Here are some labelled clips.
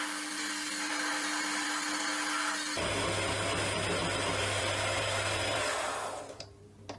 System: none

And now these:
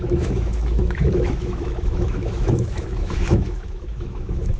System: autoencoder, DAC-VAE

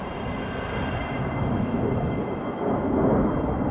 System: none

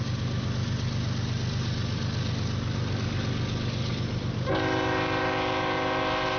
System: none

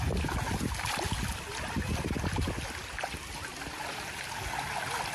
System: none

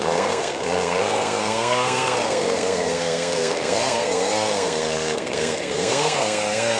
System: codec, SNAC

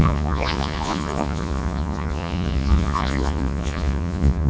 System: vocoder, Vocos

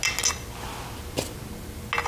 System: none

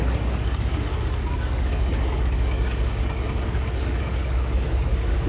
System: codec, DAC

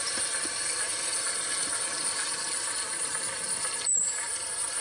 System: none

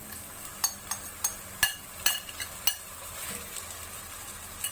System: none